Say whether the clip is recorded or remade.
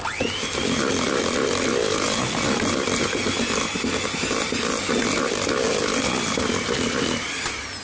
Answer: recorded